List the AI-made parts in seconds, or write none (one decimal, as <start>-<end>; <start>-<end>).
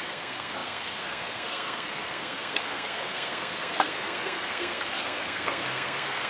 0.0-6.3